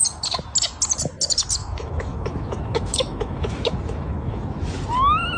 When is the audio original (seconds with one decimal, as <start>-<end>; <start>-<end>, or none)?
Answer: 0.0-1.6; 4.8-5.4